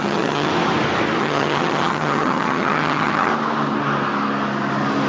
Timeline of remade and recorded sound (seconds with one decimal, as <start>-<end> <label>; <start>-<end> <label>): 0.0-0.5 remade; 0.5-1.2 recorded; 1.2-3.3 remade; 3.3-5.1 recorded

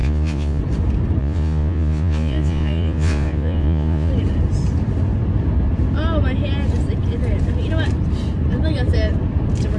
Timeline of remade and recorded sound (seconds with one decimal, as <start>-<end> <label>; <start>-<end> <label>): 0.0-0.6 remade; 0.6-1.2 recorded; 1.2-4.1 remade; 4.1-9.8 recorded

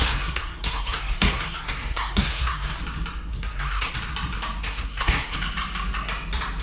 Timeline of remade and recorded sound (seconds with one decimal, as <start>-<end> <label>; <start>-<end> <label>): 0.0-2.8 remade; 2.8-3.3 recorded; 3.3-3.9 remade; 3.9-4.6 recorded; 4.6-5.4 remade; 5.4-6.6 recorded

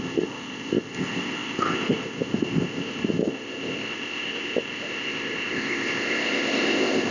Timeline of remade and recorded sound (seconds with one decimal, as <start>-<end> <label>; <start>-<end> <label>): 0.0-7.1 remade

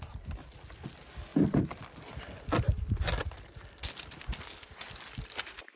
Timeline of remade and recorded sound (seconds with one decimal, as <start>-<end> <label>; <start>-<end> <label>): 0.0-5.8 recorded

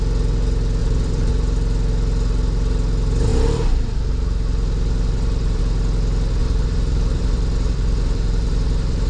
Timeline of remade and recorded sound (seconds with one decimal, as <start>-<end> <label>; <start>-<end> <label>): 0.0-0.8 recorded; 0.8-1.3 remade; 1.3-3.3 recorded; 3.3-5.6 remade; 5.6-6.4 recorded; 6.4-9.1 remade

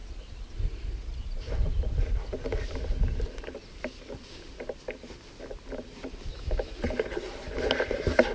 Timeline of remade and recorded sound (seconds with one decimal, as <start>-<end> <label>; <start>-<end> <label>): 0.0-6.3 recorded; 6.3-6.8 remade; 6.8-8.3 recorded